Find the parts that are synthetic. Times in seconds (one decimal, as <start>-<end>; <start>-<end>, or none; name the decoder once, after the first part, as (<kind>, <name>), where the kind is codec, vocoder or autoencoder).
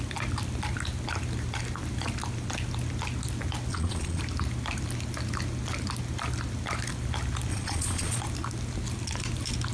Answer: 3.7-4.2 (vocoder, Vocos); 7.5-8.2